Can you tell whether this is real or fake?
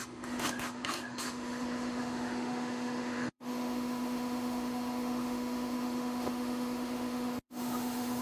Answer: fake